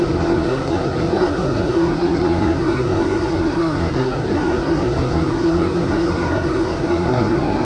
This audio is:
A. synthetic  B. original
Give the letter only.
A